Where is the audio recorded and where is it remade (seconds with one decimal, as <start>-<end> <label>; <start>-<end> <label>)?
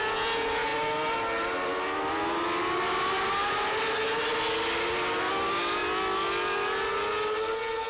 0.0-7.9 recorded